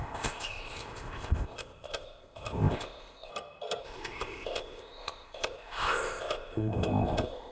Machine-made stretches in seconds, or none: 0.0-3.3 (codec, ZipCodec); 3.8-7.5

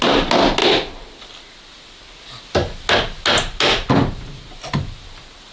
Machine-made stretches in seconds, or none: none

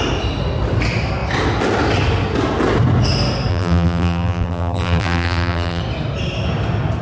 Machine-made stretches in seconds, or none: 3.5-5.8 (vocoder, BigVGAN v2)